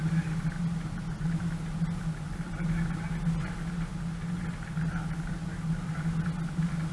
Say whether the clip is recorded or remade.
recorded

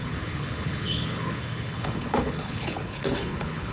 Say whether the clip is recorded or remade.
remade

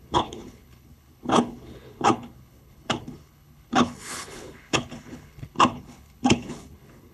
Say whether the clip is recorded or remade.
remade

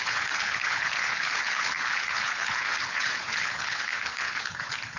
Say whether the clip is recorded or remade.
remade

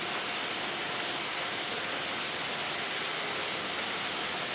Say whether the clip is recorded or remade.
recorded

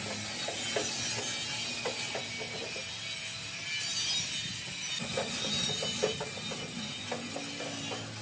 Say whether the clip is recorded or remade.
recorded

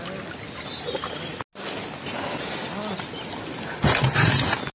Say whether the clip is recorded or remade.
recorded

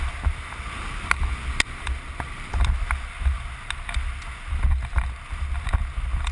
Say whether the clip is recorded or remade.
recorded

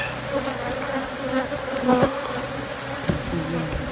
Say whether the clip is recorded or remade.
recorded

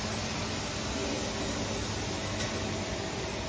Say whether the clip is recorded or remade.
recorded